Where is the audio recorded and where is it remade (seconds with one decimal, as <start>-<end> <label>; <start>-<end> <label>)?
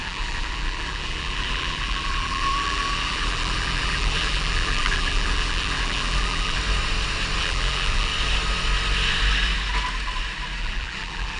0.0-6.6 remade; 6.6-7.4 recorded; 7.4-8.1 remade; 8.1-10.6 recorded; 10.6-11.4 remade